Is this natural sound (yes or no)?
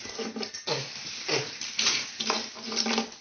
yes